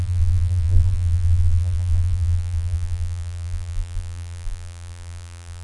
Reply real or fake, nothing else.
fake